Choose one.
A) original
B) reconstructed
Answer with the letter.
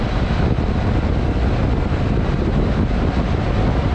A